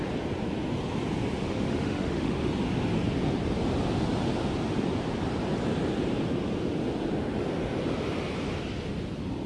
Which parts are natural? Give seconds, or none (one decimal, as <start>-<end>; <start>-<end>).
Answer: 0.0-1.4; 2.5-9.5